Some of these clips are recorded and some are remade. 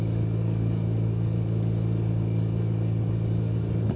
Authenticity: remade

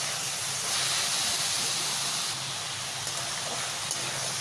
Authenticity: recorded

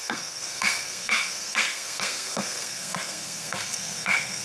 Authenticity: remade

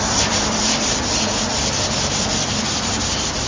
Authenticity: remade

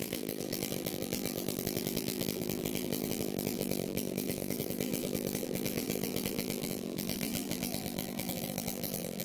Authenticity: remade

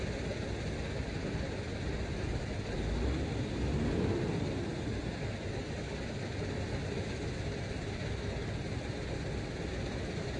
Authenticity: recorded